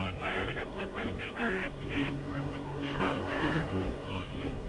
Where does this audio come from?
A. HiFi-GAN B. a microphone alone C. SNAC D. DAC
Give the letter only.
C